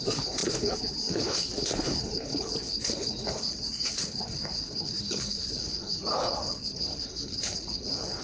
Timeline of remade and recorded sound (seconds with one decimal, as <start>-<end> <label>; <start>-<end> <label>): 0.0-8.2 remade